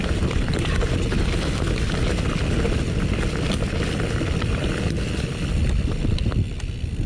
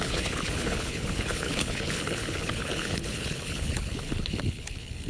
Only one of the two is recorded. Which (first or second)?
first